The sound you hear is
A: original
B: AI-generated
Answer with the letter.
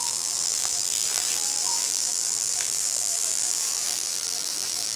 B